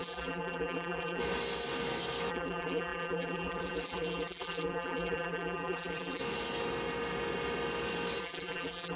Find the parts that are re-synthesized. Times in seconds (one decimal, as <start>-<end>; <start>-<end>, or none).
0.0-1.2; 2.3-6.2; 8.2-9.0